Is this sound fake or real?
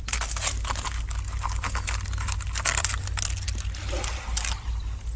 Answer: real